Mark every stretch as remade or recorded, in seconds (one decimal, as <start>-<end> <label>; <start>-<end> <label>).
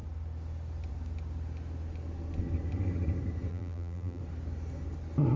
0.0-3.5 recorded; 3.5-4.2 remade; 4.2-5.4 recorded